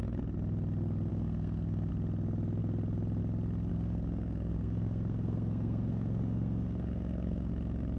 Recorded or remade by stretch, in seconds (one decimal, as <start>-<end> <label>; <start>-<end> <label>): 0.0-1.1 recorded; 1.1-1.9 remade; 1.9-3.7 recorded; 3.7-7.5 remade; 7.5-8.0 recorded